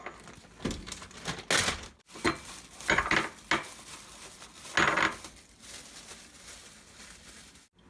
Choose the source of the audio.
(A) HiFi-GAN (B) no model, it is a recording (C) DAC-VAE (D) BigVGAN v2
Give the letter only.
B